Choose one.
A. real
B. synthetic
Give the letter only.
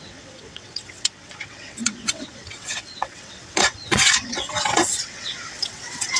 B